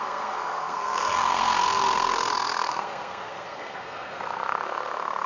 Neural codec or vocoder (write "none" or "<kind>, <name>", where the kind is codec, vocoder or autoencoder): codec, SNAC